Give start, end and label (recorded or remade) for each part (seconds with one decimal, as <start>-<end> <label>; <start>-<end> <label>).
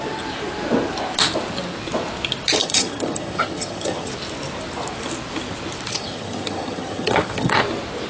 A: 0.0-2.6 recorded; 2.6-4.1 remade; 4.1-5.9 recorded; 5.9-7.6 remade; 7.6-8.1 recorded